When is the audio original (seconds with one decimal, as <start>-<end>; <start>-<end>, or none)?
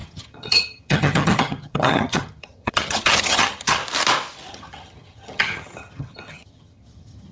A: 3.8-4.5